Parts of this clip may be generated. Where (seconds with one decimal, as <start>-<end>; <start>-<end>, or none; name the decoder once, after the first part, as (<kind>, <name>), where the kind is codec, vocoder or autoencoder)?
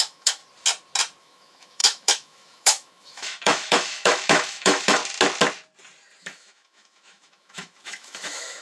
0.0-0.4 (autoencoder, DAC-VAE); 1.2-5.0; 6.2-8.6